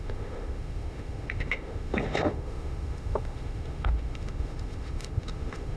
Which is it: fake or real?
fake